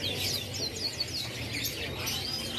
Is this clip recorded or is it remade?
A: recorded